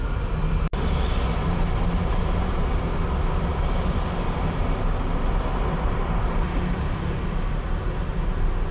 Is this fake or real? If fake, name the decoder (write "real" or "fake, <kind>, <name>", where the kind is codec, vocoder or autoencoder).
real